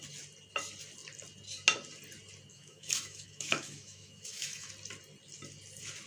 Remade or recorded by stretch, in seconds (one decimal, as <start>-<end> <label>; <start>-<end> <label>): 0.0-2.5 recorded; 2.5-4.7 remade; 4.7-6.1 recorded